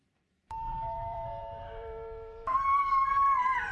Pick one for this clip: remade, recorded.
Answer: remade